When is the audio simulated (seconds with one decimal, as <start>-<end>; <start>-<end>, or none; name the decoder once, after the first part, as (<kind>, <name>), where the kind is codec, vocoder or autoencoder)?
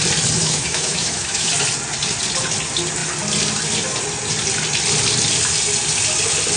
0.4-1.5 (autoencoder, DAC-VAE)